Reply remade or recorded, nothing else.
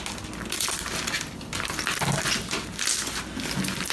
recorded